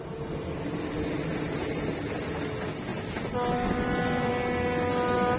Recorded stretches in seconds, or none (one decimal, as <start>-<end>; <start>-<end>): 0.0-5.4

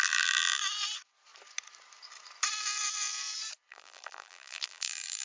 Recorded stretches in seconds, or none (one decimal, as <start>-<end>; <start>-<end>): 0.6-3.7

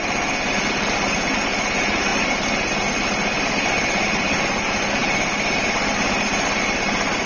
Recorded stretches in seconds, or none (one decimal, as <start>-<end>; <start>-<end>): 0.0-7.3

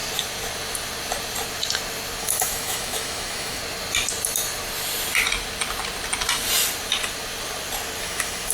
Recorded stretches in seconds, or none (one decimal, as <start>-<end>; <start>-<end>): 0.0-2.2; 3.6-8.0

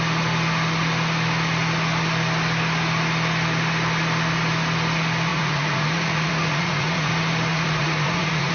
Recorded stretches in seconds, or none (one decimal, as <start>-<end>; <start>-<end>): 0.0-5.3; 7.1-7.5

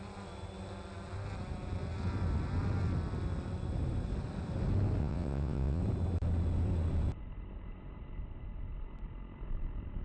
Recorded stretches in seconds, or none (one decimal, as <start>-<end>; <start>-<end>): 0.0-5.0; 5.8-10.0